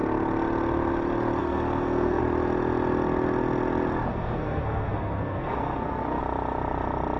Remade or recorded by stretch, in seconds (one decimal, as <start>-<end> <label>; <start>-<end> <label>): 0.0-1.4 recorded; 1.4-2.2 remade; 2.2-4.1 recorded; 4.1-6.2 remade; 6.2-7.2 recorded